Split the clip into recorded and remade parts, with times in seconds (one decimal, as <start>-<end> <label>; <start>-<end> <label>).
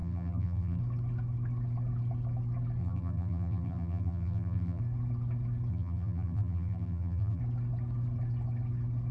0.0-0.8 remade; 0.8-2.8 recorded; 2.8-4.8 remade; 4.8-5.7 recorded; 5.7-7.4 remade; 7.4-9.1 recorded